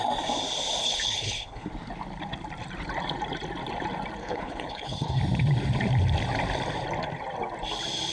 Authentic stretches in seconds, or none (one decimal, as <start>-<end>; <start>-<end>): 0.0-0.8; 1.7-4.2; 5.2-8.1